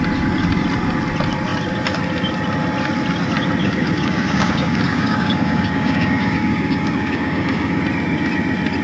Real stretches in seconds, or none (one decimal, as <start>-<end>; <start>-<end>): 0.0-3.6; 7.8-8.8